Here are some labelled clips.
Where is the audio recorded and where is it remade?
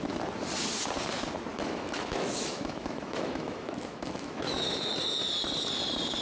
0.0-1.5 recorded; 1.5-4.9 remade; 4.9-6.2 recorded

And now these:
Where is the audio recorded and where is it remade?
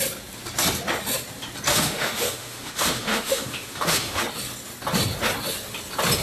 0.0-1.7 recorded; 1.7-4.2 remade; 4.2-6.2 recorded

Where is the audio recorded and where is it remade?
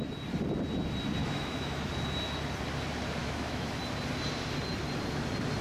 0.0-1.2 recorded; 1.2-1.9 remade; 1.9-3.2 recorded; 3.2-3.8 remade; 3.8-5.6 recorded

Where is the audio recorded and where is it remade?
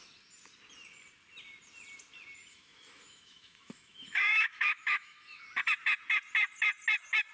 0.0-2.5 recorded; 2.5-5.4 remade; 5.4-7.3 recorded